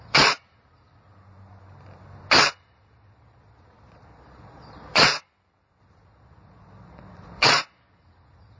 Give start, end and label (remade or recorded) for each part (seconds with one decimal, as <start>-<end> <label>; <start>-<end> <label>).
0.0-1.1 remade; 1.1-2.6 recorded; 2.6-5.1 remade; 5.1-5.8 recorded; 5.8-8.6 remade

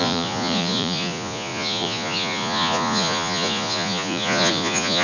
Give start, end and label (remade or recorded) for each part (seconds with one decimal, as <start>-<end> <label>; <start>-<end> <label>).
0.0-5.0 remade

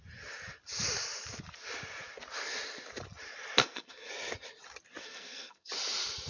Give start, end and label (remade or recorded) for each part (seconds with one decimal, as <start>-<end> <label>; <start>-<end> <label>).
0.0-3.6 recorded; 3.6-4.1 remade; 4.1-5.0 recorded; 5.0-5.7 remade; 5.7-6.3 recorded